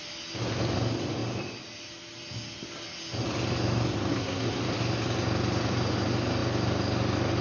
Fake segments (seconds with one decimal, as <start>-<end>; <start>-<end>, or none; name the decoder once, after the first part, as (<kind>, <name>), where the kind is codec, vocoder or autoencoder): 4.1-4.6 (codec, SNAC)